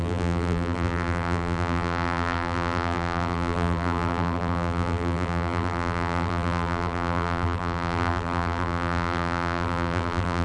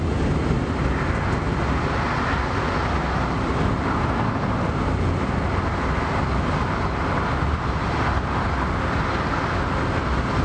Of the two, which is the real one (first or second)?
second